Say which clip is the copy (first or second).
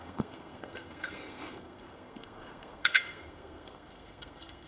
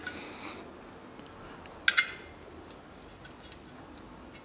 first